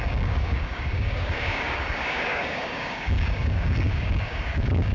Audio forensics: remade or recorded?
remade